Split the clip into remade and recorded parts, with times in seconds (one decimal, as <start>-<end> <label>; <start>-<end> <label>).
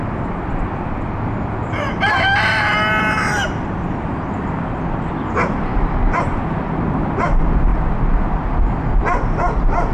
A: 0.0-9.9 recorded